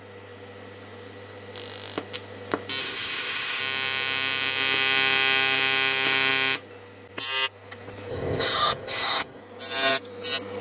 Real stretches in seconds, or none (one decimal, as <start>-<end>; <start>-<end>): 0.0-2.8; 3.6-8.1; 9.4-10.6